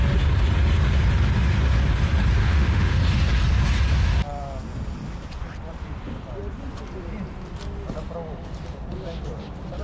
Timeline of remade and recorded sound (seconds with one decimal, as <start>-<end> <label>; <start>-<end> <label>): 0.0-2.4 recorded; 2.4-3.0 remade; 3.0-9.8 recorded